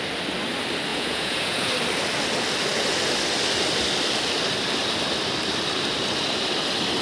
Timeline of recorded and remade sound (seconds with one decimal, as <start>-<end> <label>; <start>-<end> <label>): 0.0-0.9 recorded; 0.9-1.7 remade; 1.7-7.0 recorded